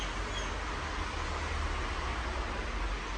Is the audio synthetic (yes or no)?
no